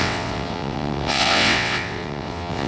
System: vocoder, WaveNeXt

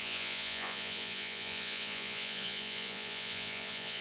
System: vocoder, Vocos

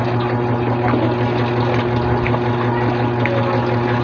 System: none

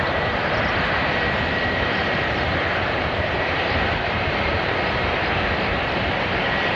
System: vocoder, BigVGAN v2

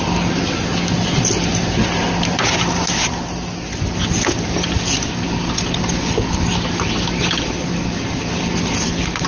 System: none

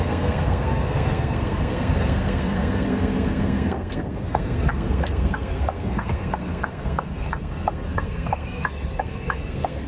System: codec, SNAC